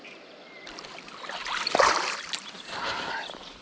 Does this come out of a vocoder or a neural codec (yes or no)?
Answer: yes